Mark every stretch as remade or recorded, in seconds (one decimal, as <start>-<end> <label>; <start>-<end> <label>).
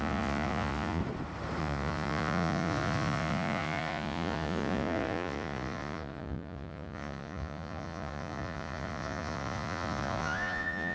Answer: 0.0-1.0 remade; 1.0-1.6 recorded; 1.6-10.9 remade